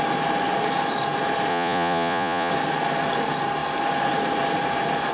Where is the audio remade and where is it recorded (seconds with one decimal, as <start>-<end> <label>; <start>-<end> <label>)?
0.0-1.5 recorded; 1.5-2.5 remade; 2.5-5.1 recorded